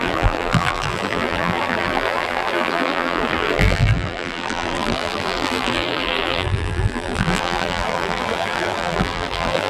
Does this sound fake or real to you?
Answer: fake